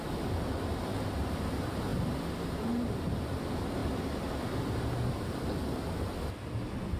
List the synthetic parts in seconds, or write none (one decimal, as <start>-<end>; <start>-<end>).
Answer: none